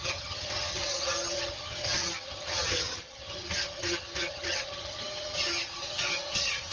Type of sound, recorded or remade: remade